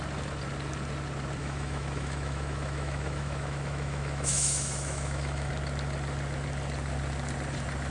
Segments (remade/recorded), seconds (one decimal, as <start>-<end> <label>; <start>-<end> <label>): 0.0-1.4 recorded; 1.4-5.5 remade; 5.5-7.9 recorded